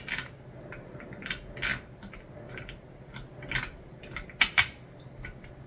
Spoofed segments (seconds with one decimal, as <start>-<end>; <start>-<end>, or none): none